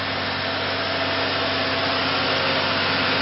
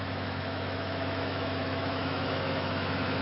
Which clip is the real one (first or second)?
first